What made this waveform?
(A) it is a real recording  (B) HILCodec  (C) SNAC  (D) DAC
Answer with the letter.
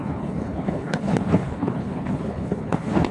B